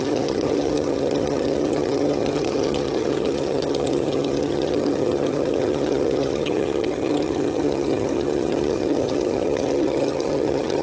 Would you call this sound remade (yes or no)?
yes